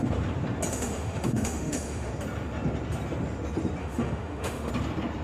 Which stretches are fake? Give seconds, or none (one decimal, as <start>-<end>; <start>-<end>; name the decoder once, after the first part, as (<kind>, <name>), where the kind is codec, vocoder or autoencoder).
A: 0.7-2.1 (autoencoder, DAC-VAE); 3.8-4.7